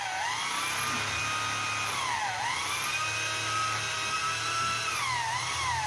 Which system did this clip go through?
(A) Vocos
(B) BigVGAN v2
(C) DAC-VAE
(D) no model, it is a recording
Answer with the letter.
D